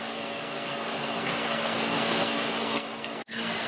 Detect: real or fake fake